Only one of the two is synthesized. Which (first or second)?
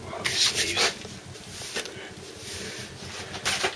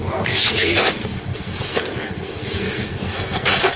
second